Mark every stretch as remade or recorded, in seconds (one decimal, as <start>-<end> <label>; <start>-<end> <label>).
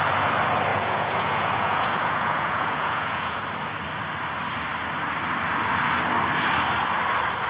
0.0-0.7 recorded; 0.7-3.4 remade; 3.4-7.5 recorded